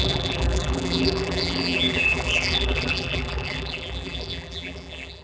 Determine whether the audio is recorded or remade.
remade